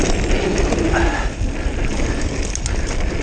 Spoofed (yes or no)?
no